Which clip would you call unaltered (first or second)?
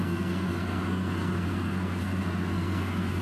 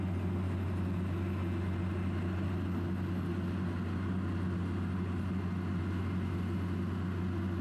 second